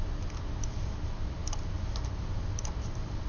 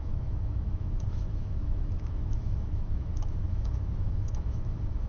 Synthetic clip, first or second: second